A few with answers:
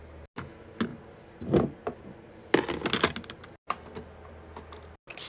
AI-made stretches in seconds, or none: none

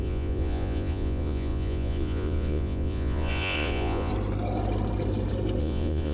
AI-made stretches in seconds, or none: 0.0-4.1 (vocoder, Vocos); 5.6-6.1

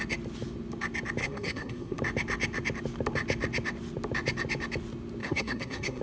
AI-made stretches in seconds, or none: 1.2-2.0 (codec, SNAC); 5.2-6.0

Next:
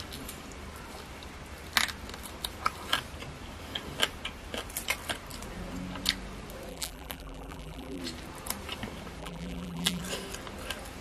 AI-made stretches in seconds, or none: 6.7-8.0 (vocoder, BigVGAN v2); 9.2-10.0

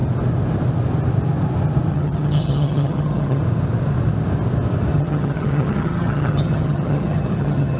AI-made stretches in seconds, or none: 1.9-3.4 (vocoder, HiFi-GAN); 5.0-7.8

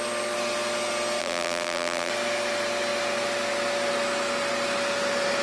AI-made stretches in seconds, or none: 1.2-2.1 (vocoder, BigVGAN v2)